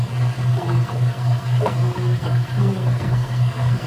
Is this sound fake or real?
fake